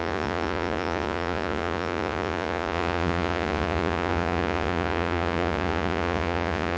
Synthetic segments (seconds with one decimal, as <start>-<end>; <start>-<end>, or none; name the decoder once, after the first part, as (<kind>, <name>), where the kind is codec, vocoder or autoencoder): 0.0-6.8 (vocoder, Vocos)